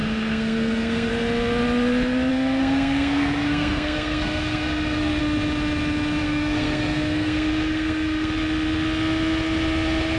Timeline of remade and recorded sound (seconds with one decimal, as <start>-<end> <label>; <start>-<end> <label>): 0.0-1.1 remade; 1.1-2.3 recorded; 2.3-5.2 remade; 5.2-6.2 recorded; 6.2-8.3 remade; 8.3-10.2 recorded